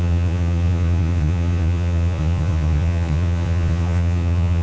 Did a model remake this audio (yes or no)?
yes